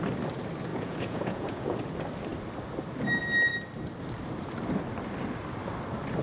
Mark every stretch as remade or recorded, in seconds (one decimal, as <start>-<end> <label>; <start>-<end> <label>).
0.0-0.7 recorded; 0.7-1.8 remade; 1.8-6.2 recorded